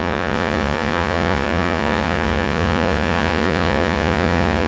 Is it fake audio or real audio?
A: fake